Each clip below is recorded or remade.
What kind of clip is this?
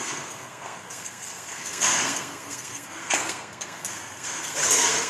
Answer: remade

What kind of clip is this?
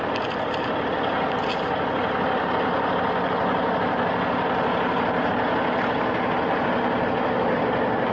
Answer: recorded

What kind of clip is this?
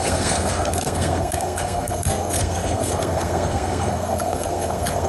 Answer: remade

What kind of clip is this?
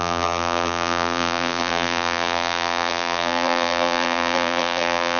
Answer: remade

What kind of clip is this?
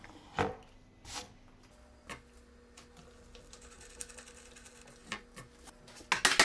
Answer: recorded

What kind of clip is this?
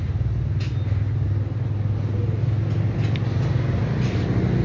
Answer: recorded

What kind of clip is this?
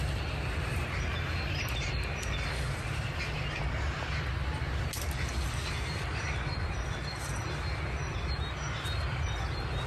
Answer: recorded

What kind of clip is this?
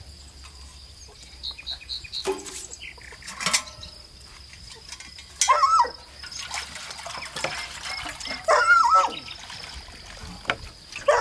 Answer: recorded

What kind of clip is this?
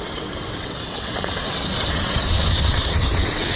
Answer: remade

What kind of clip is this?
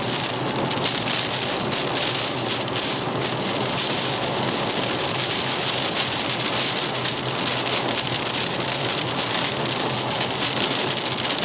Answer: remade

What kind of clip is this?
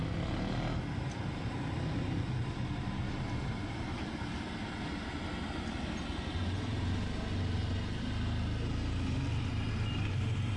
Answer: recorded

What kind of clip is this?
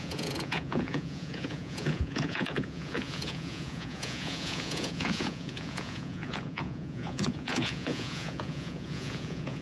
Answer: remade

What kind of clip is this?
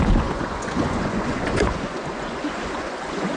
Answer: remade